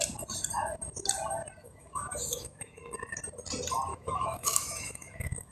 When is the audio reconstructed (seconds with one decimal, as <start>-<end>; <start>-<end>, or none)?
1.6-2.8; 3.9-5.5